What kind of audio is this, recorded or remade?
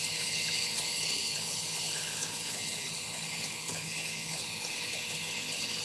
remade